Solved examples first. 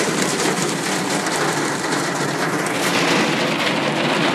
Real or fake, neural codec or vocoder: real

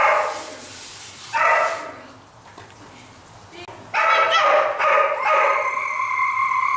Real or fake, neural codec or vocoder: real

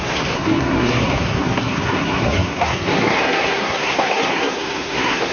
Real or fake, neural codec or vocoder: fake, codec, SNAC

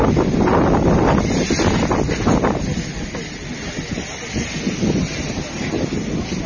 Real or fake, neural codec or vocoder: real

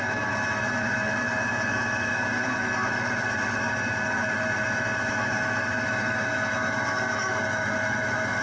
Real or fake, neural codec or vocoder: fake, autoencoder, DAC-VAE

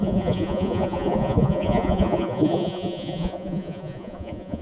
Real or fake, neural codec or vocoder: fake, vocoder, Vocos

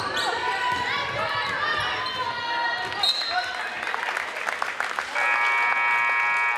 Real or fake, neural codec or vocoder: real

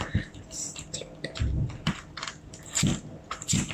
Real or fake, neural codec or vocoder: fake, vocoder, BigVGAN v2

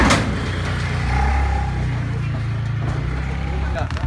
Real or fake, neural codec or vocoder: real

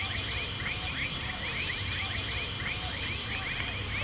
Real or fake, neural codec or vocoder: real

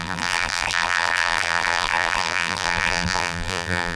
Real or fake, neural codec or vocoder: fake, vocoder, BigVGAN v2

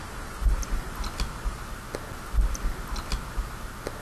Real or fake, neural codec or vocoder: real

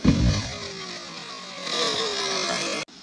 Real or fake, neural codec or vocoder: real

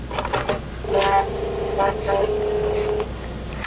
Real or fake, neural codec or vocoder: real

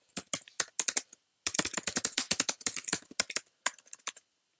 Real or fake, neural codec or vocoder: real